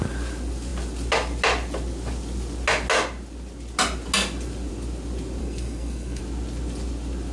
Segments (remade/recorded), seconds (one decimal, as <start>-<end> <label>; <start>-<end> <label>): 0.0-5.4 recorded; 5.4-6.2 remade; 6.2-7.3 recorded